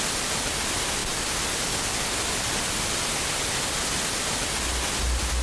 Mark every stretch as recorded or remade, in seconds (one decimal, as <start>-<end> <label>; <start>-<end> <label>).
0.0-5.4 recorded